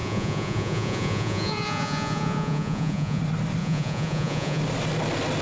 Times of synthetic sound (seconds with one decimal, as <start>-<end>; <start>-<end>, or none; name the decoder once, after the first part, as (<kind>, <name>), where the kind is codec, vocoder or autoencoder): 0.0-3.2 (vocoder, Vocos); 3.6-4.6